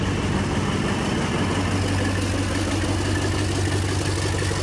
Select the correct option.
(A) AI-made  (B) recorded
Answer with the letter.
B